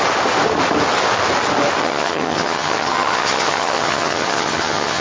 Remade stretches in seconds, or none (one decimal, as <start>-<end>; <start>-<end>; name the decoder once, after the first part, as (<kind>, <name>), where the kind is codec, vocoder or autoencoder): 1.8-5.0 (vocoder, HiFi-GAN)